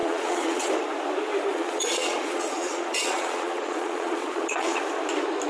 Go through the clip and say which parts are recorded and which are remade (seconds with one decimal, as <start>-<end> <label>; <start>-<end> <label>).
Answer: 0.0-0.7 remade; 0.7-1.5 recorded; 1.5-4.8 remade; 4.8-5.5 recorded